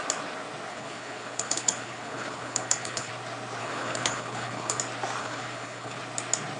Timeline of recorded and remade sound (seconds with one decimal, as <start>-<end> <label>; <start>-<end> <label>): 0.0-0.7 recorded; 0.7-3.1 remade; 3.1-3.6 recorded; 3.6-4.8 remade; 4.8-5.2 recorded; 5.2-6.0 remade; 6.0-6.6 recorded